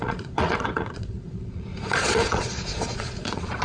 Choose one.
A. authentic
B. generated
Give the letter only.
B